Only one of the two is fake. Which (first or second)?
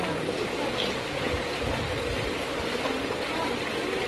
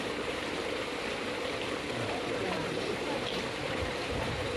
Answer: second